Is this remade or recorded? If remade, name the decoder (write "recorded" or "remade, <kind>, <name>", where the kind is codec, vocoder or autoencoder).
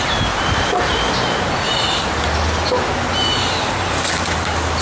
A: recorded